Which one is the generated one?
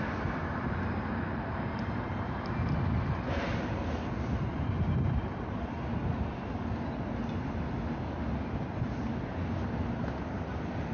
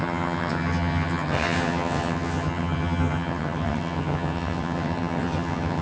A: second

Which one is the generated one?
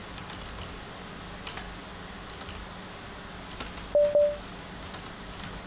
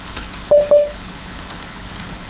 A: second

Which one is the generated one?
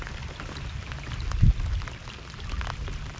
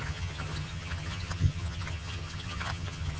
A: second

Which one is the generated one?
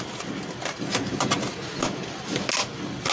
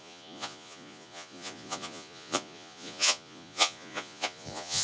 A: second